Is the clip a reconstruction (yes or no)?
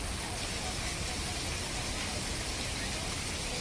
no